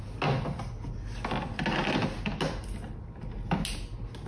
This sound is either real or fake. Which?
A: real